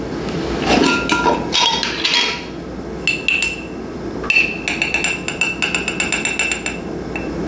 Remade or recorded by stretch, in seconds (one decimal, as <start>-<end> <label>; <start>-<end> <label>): 0.0-7.5 recorded